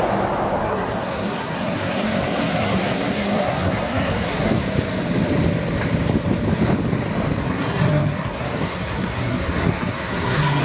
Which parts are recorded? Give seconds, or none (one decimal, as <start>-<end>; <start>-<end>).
0.0-0.6; 4.6-7.4